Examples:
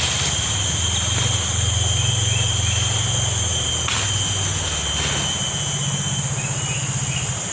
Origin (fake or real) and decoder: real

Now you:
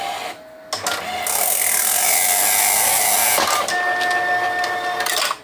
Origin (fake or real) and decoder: real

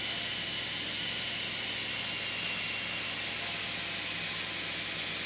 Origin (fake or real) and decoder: real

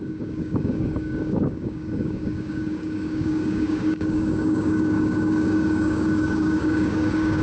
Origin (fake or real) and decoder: fake, codec, DAC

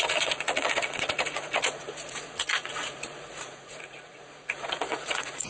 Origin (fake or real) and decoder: fake, vocoder, Vocos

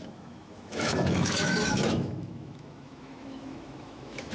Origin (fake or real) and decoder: fake, autoencoder, DAC-VAE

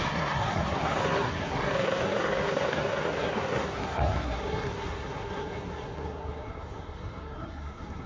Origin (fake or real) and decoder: fake, codec, SNAC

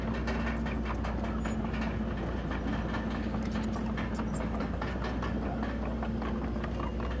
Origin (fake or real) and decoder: real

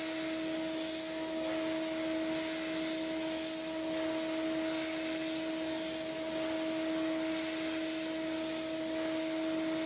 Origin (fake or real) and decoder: real